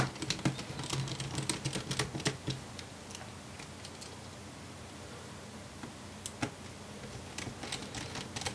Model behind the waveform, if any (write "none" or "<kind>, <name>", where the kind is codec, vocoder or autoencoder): none